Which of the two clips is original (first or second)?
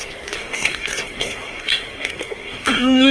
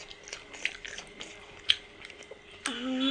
second